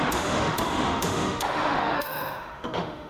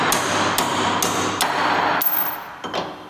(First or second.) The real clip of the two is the second